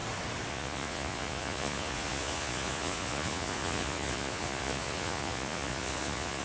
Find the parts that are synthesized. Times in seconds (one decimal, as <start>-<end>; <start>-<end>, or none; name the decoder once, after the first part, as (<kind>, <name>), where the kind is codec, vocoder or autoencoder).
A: 0.5-6.4 (vocoder, Vocos)